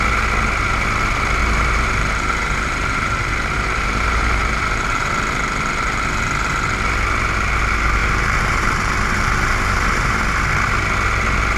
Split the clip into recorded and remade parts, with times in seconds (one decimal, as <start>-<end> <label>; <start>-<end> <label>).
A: 0.0-1.4 recorded; 1.4-5.1 remade; 5.1-8.0 recorded; 8.0-10.2 remade; 10.2-11.6 recorded